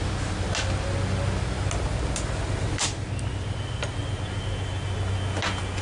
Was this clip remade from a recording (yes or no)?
no